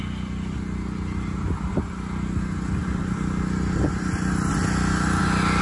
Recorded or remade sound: recorded